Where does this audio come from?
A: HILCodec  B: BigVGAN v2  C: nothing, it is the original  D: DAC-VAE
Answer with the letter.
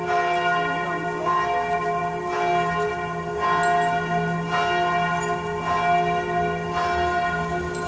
C